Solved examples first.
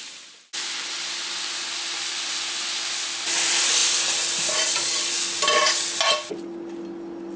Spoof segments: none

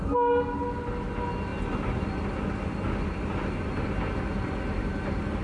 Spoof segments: none

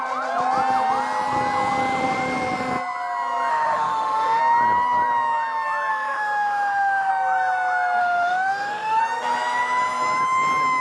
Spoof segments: 3.5-4.4 (autoencoder, DAC-VAE); 5.9-7.1; 8.0-9.0

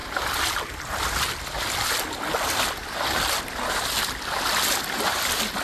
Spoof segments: none